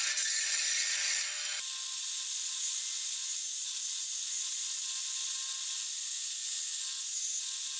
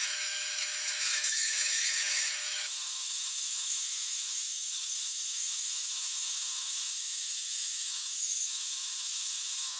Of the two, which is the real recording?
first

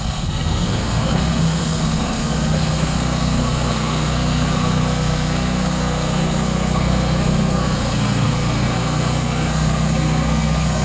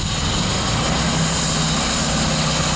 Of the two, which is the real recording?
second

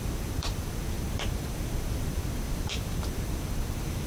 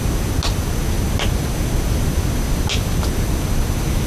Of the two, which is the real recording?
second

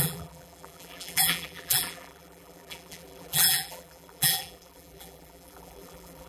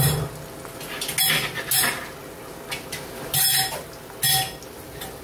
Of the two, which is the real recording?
second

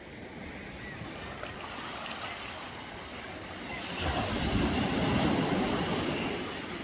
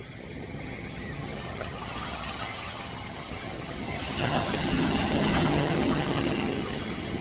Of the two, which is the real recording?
first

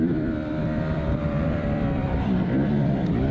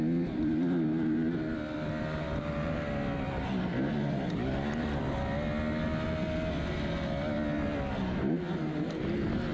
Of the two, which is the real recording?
second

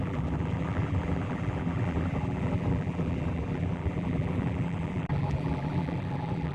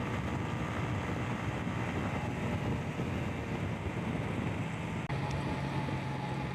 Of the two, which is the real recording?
second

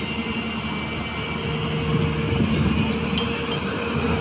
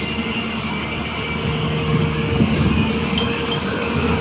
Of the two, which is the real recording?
first